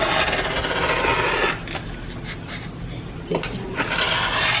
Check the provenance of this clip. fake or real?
real